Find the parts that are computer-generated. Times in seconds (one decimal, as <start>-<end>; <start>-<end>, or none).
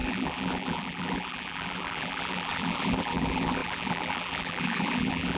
0.0-5.4